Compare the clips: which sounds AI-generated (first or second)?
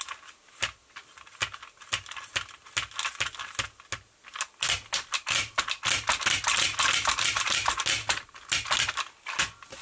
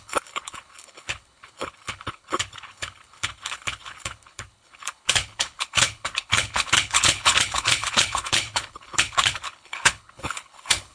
second